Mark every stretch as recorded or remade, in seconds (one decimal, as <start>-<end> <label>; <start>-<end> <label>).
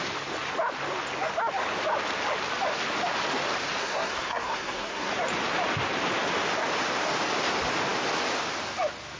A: 0.0-3.8 recorded; 3.8-5.1 remade; 5.1-9.2 recorded